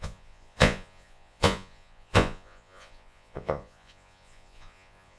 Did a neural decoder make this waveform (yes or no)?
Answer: yes